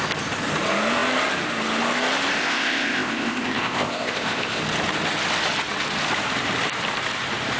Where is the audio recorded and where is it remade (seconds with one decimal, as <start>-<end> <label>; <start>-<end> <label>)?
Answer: 0.0-2.4 recorded; 2.4-4.6 remade; 4.6-7.6 recorded